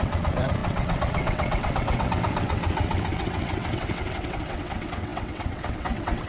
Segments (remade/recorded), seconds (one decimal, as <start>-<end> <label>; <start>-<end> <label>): 0.0-6.3 remade